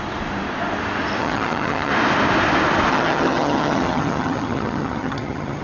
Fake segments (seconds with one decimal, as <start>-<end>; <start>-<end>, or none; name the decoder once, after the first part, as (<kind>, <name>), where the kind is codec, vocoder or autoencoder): 1.2-1.9 (vocoder, HiFi-GAN); 2.9-5.6